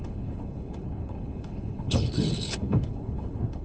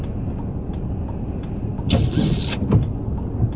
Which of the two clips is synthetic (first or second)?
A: first